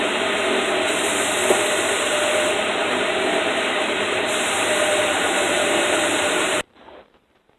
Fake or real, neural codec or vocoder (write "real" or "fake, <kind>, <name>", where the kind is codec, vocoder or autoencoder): fake, vocoder, BigVGAN v2